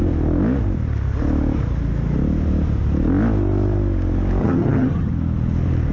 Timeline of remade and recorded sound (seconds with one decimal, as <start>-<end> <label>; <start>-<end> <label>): 0.0-4.4 recorded; 4.4-5.1 remade; 5.1-5.9 recorded